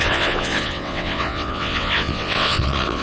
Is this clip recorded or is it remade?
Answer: remade